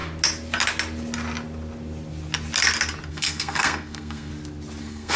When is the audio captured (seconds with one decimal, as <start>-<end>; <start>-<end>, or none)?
0.0-3.1; 4.3-4.8